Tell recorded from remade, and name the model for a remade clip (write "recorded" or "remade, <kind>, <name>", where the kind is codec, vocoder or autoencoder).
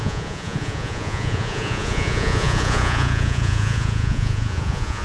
remade, vocoder, Vocos